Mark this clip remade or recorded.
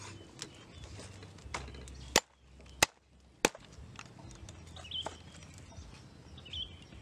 recorded